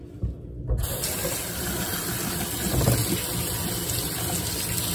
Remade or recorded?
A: recorded